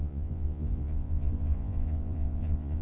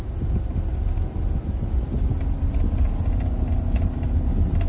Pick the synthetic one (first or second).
first